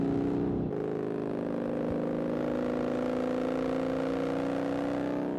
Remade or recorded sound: recorded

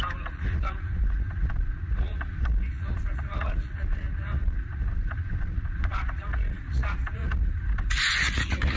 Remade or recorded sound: remade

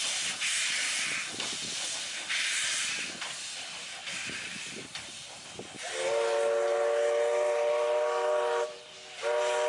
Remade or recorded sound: recorded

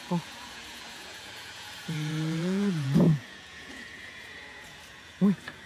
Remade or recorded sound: remade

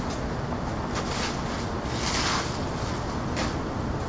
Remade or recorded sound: recorded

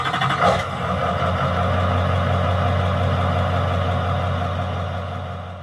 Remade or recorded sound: recorded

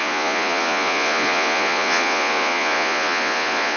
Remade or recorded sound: remade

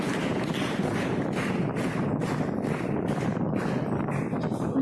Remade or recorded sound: recorded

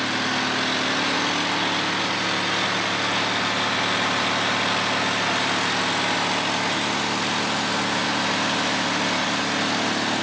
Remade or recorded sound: recorded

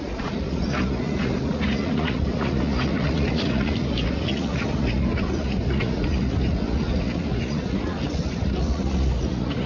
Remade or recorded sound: remade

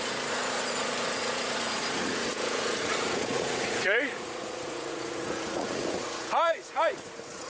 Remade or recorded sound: remade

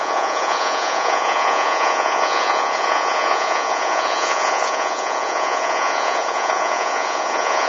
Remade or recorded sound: remade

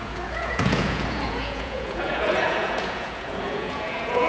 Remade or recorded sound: remade